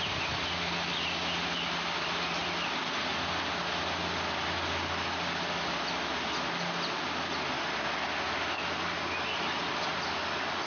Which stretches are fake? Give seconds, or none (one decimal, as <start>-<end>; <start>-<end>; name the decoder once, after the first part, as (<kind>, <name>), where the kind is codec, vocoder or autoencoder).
none